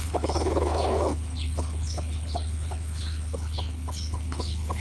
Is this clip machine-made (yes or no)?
yes